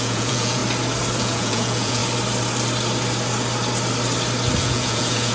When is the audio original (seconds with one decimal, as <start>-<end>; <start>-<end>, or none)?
0.6-1.2; 2.0-4.6